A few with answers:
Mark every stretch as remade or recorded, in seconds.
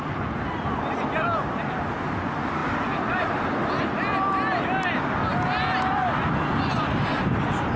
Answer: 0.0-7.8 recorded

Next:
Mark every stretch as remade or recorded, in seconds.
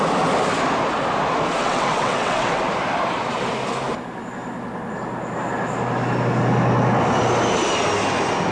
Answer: 0.0-1.6 recorded; 1.6-2.6 remade; 2.6-8.5 recorded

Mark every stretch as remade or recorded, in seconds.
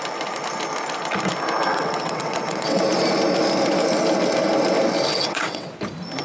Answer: 0.0-1.7 recorded; 1.7-2.8 remade; 2.8-5.1 recorded; 5.1-5.8 remade; 5.8-6.2 recorded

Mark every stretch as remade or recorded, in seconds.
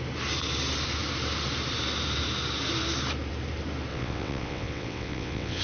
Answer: 0.0-3.9 recorded; 3.9-5.6 remade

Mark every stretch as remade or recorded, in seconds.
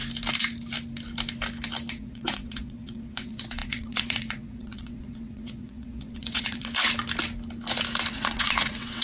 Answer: 0.0-1.9 recorded; 1.9-6.7 remade; 6.7-8.1 recorded; 8.1-9.0 remade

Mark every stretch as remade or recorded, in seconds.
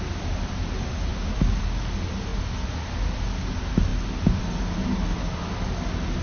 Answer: 0.0-6.2 recorded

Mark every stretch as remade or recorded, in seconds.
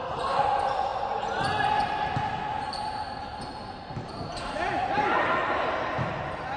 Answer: 0.0-6.6 recorded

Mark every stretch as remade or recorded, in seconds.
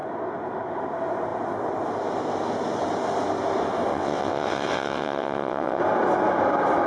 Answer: 0.0-3.9 recorded; 3.9-5.8 remade; 5.8-6.9 recorded